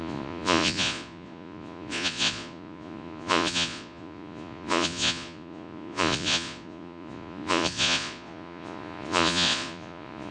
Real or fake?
fake